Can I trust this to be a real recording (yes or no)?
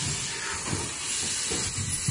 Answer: yes